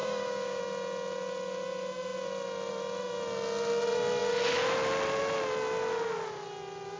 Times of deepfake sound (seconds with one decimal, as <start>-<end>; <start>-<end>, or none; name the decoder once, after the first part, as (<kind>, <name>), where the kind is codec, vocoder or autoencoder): 0.0-0.6 (codec, DAC)